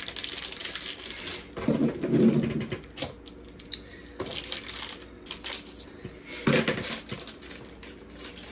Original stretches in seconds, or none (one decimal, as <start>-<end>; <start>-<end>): 0.0-8.5